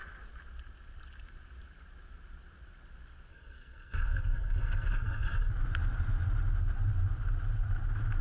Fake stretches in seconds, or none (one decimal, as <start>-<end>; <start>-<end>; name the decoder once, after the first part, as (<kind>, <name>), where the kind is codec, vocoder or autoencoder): 3.3-5.5 (codec, SNAC)